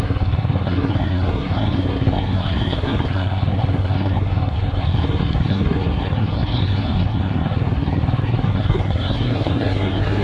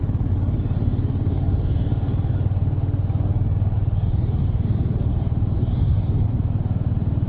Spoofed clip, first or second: first